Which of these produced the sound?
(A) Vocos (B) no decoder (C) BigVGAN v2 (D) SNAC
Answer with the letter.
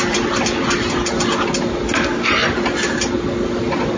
B